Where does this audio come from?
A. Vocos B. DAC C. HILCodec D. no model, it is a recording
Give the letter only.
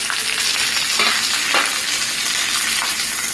D